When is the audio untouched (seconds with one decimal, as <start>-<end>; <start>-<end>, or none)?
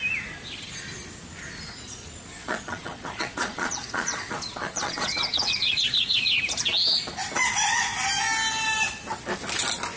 0.0-2.4; 6.3-10.0